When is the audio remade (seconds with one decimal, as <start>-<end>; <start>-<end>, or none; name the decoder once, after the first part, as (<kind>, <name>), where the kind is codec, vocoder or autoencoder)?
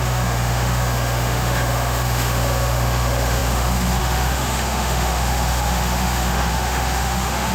0.0-7.5 (autoencoder, DAC-VAE)